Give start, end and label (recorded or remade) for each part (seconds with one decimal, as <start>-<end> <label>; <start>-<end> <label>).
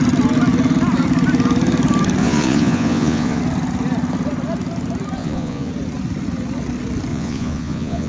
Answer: 0.0-2.2 recorded; 2.2-3.4 remade; 3.4-5.2 recorded; 5.2-5.7 remade; 5.7-7.1 recorded; 7.1-8.1 remade